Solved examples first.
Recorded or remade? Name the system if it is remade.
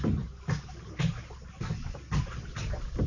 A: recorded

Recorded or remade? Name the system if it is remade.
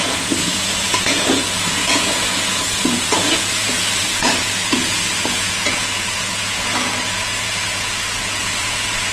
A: remade, vocoder, Vocos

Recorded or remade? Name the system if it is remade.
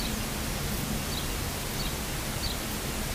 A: recorded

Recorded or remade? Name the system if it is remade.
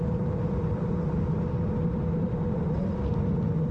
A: remade, vocoder, BigVGAN v2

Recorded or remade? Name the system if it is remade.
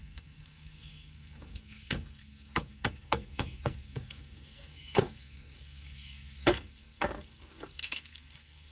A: remade, codec, SNAC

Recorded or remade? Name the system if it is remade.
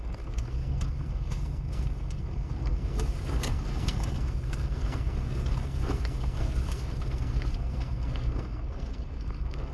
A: remade, codec, SNAC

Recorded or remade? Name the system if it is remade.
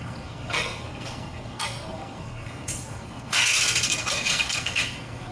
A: remade, codec, SNAC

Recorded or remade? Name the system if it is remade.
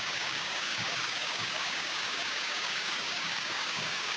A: remade, codec, DAC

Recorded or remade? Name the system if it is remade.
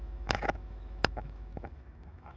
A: remade, autoencoder, DAC-VAE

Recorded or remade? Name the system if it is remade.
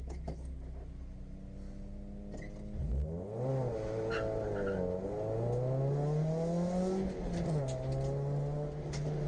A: recorded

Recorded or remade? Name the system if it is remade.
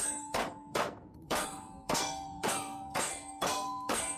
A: remade, codec, SNAC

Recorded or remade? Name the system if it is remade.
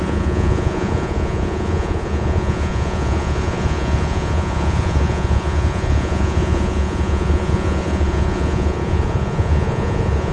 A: remade, vocoder, Vocos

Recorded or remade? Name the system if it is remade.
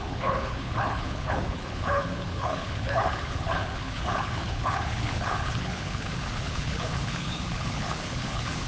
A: remade, codec, HILCodec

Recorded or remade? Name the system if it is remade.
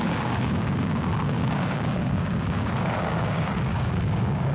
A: remade, codec, DAC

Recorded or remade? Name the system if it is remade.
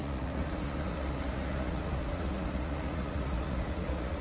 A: remade, vocoder, Vocos